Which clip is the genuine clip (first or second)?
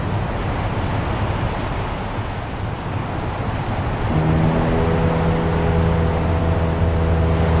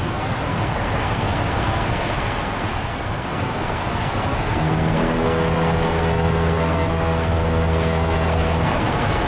first